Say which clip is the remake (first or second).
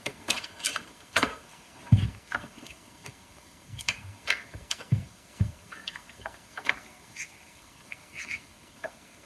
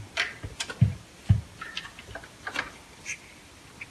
first